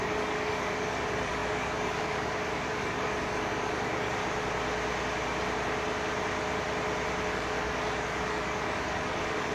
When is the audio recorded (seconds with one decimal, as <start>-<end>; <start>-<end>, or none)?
4.2-7.3